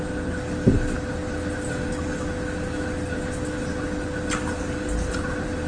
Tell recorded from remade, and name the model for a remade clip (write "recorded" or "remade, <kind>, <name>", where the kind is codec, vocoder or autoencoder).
recorded